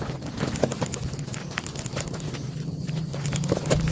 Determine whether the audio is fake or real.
real